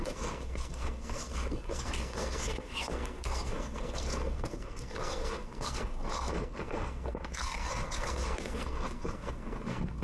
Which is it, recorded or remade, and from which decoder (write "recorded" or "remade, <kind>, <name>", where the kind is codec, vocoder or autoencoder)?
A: remade, codec, SNAC